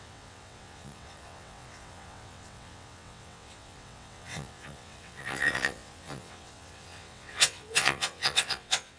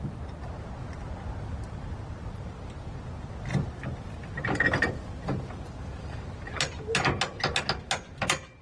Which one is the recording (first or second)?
second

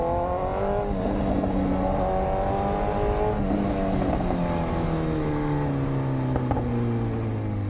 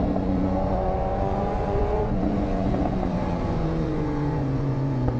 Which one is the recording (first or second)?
first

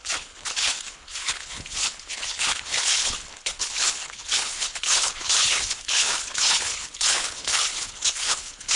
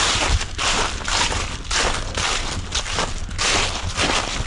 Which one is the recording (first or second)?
second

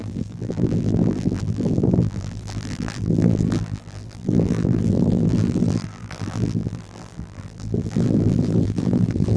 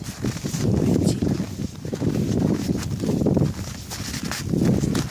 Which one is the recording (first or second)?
second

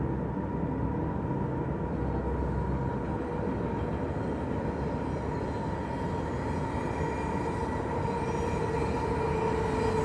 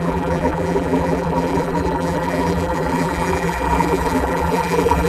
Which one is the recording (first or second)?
first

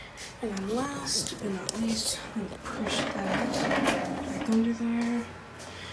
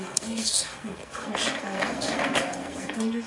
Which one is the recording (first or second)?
first